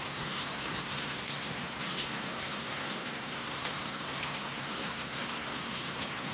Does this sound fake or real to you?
fake